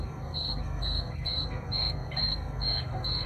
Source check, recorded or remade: remade